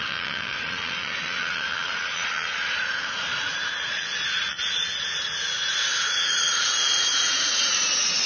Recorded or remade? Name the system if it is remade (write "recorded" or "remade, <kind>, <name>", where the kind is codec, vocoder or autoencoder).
remade, vocoder, Vocos